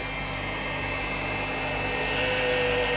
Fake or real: real